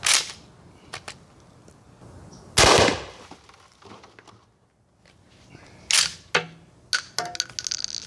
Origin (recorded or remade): recorded